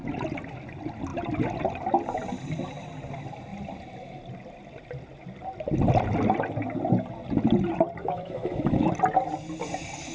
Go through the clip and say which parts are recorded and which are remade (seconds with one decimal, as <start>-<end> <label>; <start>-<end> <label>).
0.0-8.0 recorded; 8.0-8.9 remade; 8.9-10.1 recorded